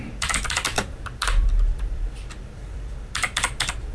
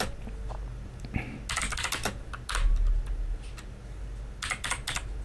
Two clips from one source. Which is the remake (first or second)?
first